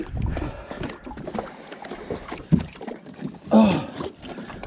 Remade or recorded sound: recorded